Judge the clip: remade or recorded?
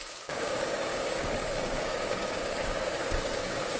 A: remade